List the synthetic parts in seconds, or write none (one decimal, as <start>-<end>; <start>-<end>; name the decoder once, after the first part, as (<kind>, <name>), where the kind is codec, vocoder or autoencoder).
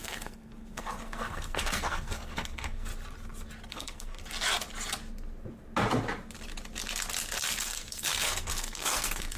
0.0-2.9 (codec, SNAC); 3.7-4.2; 7.6-9.4